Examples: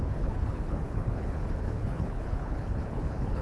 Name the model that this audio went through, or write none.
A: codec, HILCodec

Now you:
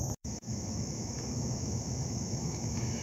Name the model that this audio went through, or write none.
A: autoencoder, DAC-VAE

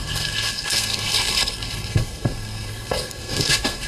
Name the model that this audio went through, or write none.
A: codec, SNAC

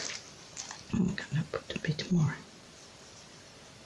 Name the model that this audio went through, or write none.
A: vocoder, BigVGAN v2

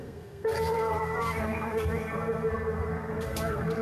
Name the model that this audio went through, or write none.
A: codec, SNAC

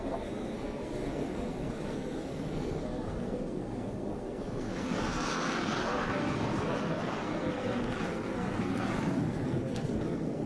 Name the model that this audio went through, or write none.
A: codec, SNAC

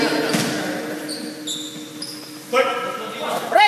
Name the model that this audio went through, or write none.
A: none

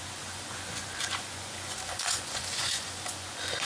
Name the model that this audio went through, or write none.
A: vocoder, Vocos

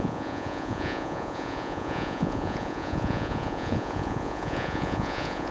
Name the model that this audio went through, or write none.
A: vocoder, Vocos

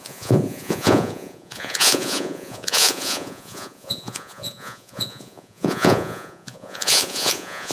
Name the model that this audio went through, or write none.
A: vocoder, Vocos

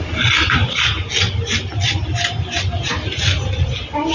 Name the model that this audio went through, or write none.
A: none